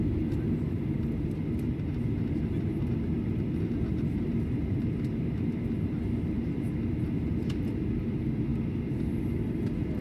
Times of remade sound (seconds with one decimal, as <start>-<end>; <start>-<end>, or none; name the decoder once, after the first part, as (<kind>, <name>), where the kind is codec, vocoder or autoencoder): none